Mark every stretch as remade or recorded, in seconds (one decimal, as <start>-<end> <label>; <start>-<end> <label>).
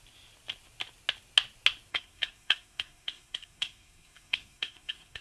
0.0-1.9 recorded; 1.9-5.2 remade